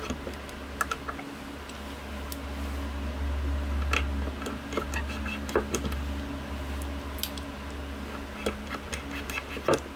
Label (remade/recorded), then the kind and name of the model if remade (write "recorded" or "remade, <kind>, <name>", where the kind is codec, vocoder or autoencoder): recorded